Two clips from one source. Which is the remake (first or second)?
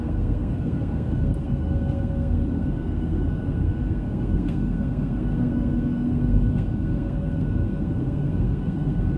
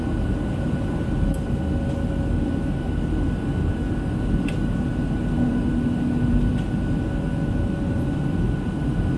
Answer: first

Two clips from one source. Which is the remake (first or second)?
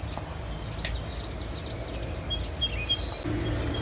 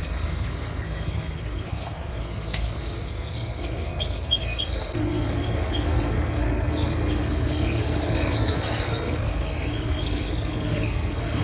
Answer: second